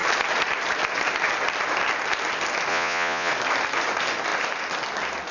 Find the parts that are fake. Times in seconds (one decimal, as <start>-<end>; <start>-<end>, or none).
2.7-3.3